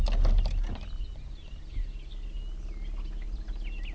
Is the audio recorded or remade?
recorded